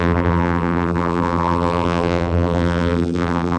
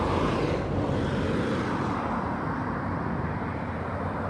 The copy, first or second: first